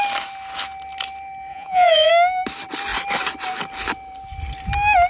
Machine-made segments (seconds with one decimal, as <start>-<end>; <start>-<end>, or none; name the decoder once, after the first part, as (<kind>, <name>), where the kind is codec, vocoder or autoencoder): 1.5-2.1 (vocoder, Vocos)